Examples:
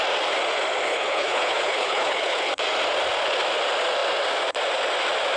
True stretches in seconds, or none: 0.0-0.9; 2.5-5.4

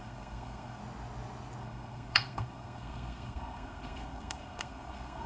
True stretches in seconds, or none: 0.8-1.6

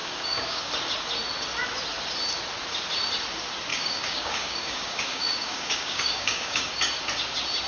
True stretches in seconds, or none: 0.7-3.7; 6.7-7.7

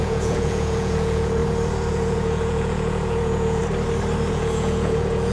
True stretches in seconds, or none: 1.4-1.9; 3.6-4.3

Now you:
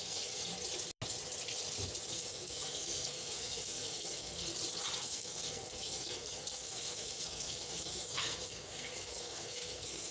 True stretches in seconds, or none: 0.5-2.1; 4.5-5.0

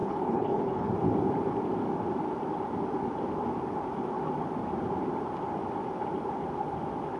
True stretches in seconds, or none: 0.9-7.2